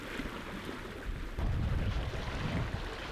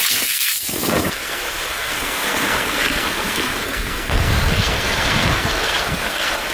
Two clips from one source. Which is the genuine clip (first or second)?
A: first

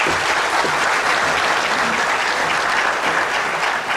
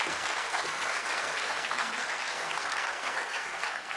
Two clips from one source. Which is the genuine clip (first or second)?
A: first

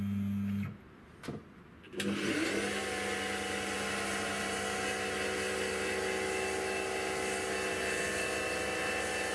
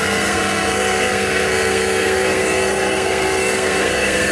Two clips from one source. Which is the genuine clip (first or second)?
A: first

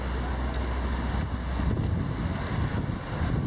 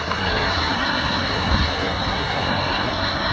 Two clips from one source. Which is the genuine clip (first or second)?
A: first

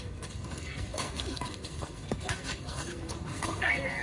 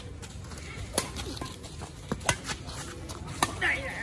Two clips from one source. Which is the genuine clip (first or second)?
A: second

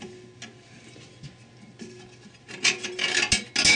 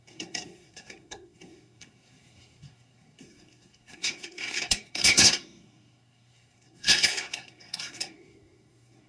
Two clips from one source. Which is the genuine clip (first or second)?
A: first